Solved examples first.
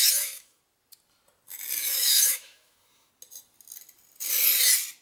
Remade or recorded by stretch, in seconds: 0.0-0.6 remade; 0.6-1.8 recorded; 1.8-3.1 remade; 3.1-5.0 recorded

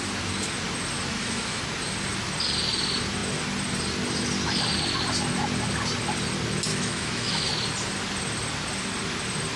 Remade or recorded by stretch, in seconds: 0.0-1.1 recorded; 1.1-1.6 remade; 1.6-6.7 recorded; 6.7-7.5 remade; 7.5-9.6 recorded

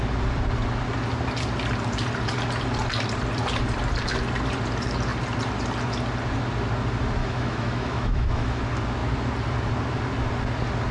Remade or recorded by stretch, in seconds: 0.0-7.2 recorded; 7.2-8.6 remade; 8.6-10.9 recorded

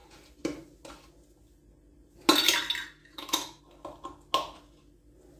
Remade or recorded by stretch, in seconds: 0.0-3.0 recorded; 3.0-3.6 remade; 3.6-5.4 recorded